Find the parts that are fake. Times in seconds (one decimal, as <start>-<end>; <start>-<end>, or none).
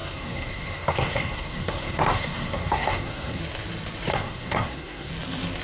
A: 0.0-3.4; 4.1-5.1